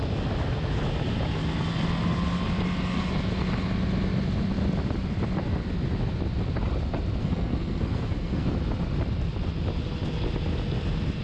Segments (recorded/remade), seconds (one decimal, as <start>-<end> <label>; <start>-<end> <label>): 0.0-7.2 recorded; 7.2-8.5 remade; 8.5-11.2 recorded